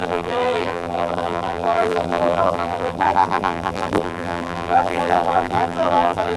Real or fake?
fake